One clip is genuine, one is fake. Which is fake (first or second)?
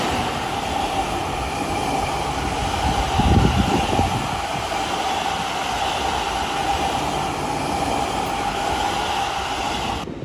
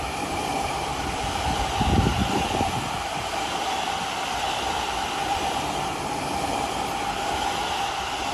second